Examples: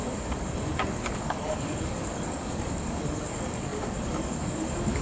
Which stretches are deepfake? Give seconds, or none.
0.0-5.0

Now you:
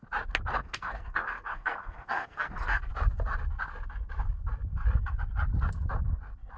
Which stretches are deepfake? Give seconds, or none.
0.5-2.9

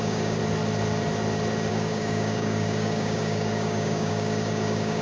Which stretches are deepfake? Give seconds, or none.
0.0-0.4; 1.7-5.0

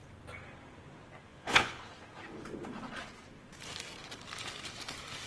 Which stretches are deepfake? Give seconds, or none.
1.3-1.8

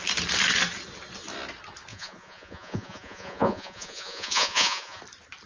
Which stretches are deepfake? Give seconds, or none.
1.9-5.0

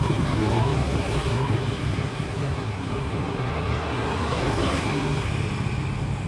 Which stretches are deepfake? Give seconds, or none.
0.0-5.3

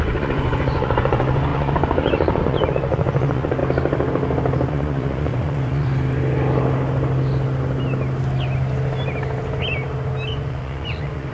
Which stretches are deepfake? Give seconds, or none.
0.0-3.6; 4.7-5.9; 10.3-11.3

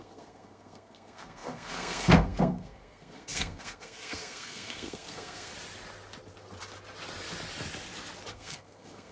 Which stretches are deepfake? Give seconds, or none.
0.0-5.5; 8.3-9.1